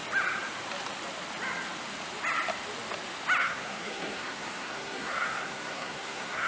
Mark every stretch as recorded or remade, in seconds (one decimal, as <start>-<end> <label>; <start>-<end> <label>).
0.0-3.4 recorded; 3.4-6.5 remade